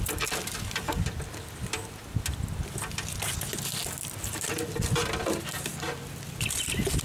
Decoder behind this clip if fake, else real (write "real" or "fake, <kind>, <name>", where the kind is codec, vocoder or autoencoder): real